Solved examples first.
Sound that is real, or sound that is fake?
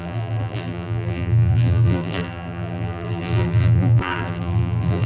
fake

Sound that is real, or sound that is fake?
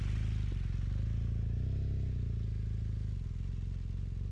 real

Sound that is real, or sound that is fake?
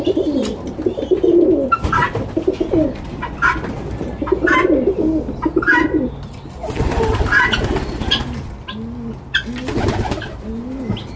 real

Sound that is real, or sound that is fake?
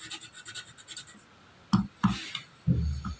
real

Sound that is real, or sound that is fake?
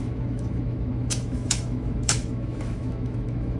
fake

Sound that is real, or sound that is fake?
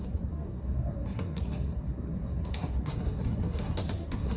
fake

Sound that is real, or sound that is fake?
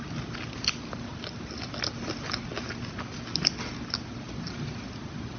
real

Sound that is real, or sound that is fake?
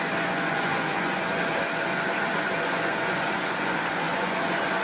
fake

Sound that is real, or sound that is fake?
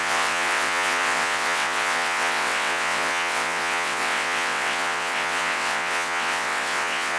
fake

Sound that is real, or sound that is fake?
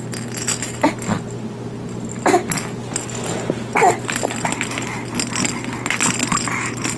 real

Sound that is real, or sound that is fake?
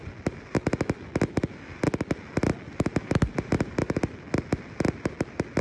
real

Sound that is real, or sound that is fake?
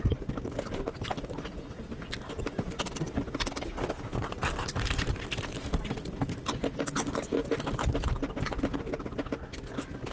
real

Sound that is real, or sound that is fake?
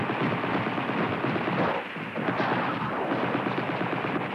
real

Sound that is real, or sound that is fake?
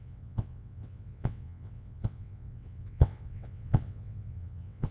fake